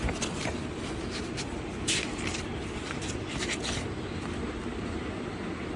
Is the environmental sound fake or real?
fake